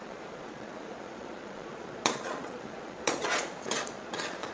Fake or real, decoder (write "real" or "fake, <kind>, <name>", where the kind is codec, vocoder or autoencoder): fake, vocoder, Vocos